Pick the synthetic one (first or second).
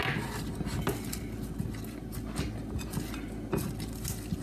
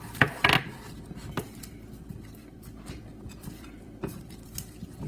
second